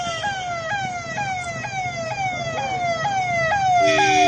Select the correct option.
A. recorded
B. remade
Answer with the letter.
A